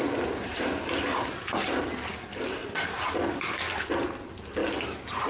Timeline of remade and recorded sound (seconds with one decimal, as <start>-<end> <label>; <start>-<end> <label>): 0.0-5.3 recorded